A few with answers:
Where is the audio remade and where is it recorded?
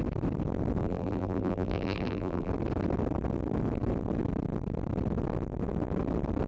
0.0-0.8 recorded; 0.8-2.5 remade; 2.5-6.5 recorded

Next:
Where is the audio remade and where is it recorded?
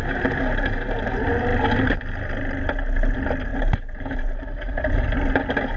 0.0-3.5 recorded; 3.5-4.9 remade; 4.9-5.8 recorded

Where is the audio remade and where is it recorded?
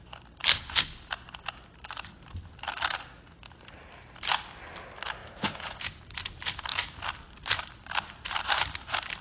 0.0-5.2 recorded; 5.2-6.0 remade; 6.0-9.2 recorded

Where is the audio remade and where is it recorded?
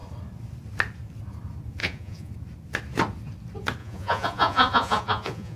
0.0-1.8 recorded; 1.8-2.3 remade; 2.3-3.8 recorded; 3.8-5.6 remade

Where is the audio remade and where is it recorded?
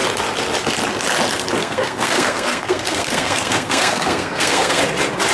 0.0-1.6 recorded; 1.6-4.8 remade; 4.8-5.3 recorded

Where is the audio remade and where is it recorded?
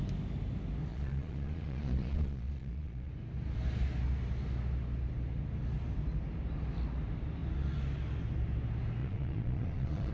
0.0-0.9 recorded; 0.9-3.1 remade; 3.1-9.0 recorded; 9.0-10.1 remade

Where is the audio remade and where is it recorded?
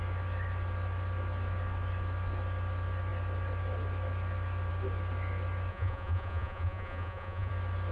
0.0-5.7 recorded; 5.7-7.5 remade; 7.5-7.9 recorded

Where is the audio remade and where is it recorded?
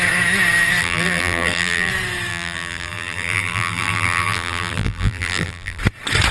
0.0-0.8 recorded; 0.8-1.9 remade; 1.9-2.3 recorded; 2.3-5.8 remade; 5.8-6.3 recorded